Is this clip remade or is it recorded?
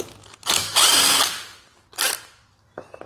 recorded